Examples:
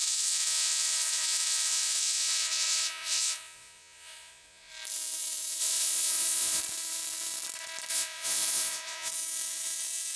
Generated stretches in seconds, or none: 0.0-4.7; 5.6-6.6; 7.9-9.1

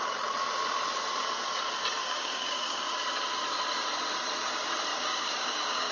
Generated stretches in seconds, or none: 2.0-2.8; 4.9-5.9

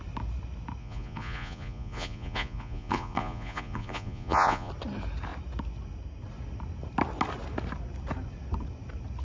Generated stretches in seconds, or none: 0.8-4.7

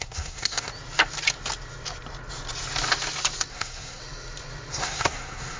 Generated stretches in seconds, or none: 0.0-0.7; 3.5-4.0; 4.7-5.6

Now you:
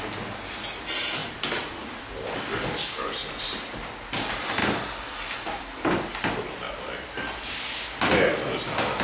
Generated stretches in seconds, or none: none

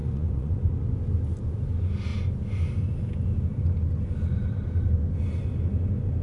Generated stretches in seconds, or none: 0.0-0.6